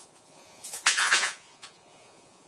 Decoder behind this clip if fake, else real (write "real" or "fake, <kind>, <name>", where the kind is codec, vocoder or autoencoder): fake, vocoder, Vocos